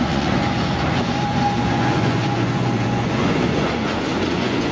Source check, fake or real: fake